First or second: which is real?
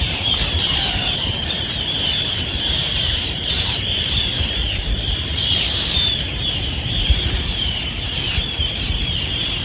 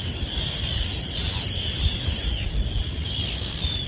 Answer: second